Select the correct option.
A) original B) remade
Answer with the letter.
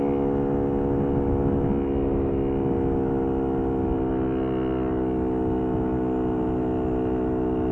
A